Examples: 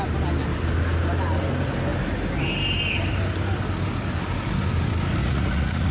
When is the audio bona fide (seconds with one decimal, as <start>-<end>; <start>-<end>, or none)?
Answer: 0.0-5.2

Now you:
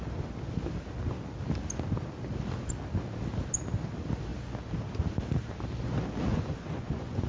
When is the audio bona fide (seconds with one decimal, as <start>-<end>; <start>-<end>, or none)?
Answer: 0.0-6.3

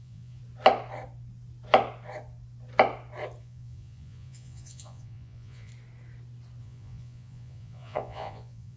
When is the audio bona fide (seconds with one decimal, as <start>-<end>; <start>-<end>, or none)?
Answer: 0.4-3.4; 5.7-6.6

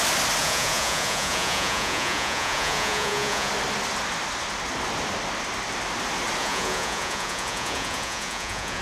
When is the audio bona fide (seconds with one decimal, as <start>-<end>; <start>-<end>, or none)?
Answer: 0.0-0.4; 3.5-6.4

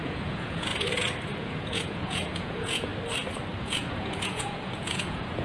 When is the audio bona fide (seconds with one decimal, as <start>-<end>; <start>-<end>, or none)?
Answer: 0.7-1.4; 2.9-3.6

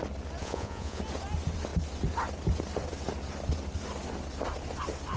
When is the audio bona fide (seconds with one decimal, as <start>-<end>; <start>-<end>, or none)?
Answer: 0.0-0.4; 1.0-5.2